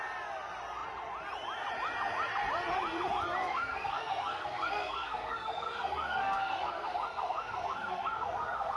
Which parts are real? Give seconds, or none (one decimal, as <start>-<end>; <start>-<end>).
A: 0.0-3.4